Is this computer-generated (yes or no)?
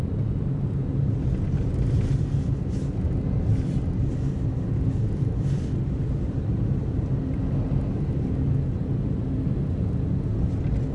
no